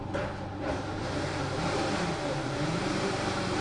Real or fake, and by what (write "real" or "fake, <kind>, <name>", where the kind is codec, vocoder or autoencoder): fake, vocoder, BigVGAN v2